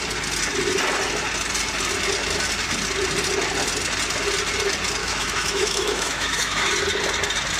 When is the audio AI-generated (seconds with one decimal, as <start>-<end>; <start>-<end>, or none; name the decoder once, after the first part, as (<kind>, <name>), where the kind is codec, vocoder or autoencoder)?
5.0-6.7 (autoencoder, DAC-VAE)